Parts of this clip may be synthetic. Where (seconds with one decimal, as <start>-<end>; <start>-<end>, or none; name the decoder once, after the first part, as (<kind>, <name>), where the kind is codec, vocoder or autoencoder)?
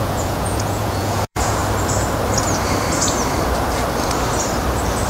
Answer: 0.0-1.6 (vocoder, Vocos)